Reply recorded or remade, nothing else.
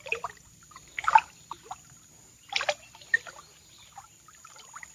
recorded